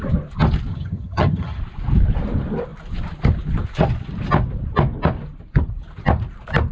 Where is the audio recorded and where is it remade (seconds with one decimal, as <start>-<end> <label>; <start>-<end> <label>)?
0.0-0.7 recorded; 0.7-1.6 remade; 1.6-6.7 recorded